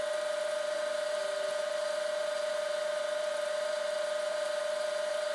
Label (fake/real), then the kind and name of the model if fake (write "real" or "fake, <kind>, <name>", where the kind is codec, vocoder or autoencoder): fake, vocoder, BigVGAN v2